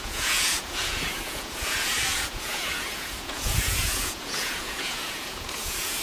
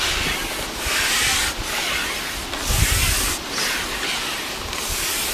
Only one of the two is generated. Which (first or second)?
first